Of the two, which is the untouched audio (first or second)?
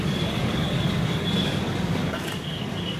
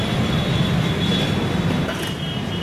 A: second